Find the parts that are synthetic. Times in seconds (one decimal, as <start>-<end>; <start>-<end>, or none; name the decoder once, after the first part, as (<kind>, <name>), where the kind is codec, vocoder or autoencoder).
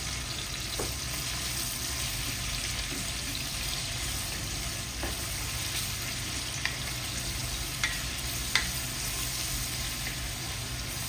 none